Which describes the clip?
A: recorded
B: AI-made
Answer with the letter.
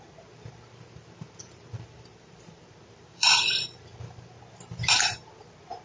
B